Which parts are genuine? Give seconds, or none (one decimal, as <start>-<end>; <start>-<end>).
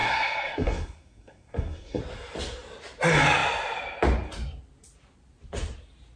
2.0-6.2